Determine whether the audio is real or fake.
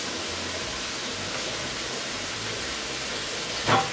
real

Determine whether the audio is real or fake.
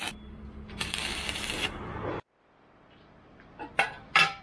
fake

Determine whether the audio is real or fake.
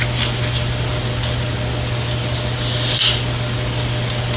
real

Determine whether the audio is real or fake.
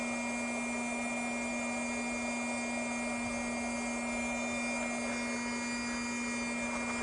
real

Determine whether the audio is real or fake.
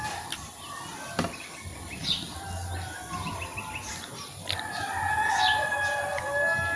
real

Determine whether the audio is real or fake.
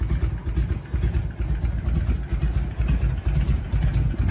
real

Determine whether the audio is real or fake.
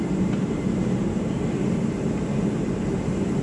fake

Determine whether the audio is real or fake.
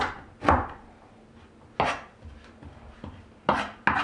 real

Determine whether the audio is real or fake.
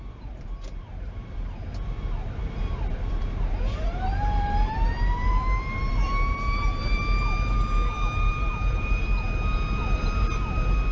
fake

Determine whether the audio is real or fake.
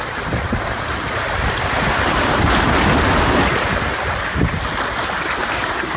real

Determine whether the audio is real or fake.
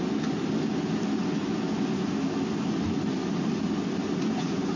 real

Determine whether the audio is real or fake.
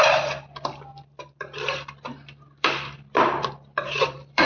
fake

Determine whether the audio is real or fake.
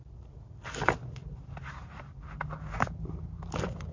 real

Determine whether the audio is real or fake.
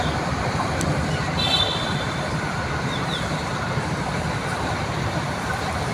fake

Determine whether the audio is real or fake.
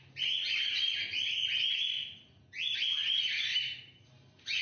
real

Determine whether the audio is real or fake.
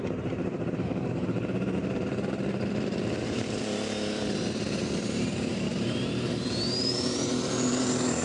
fake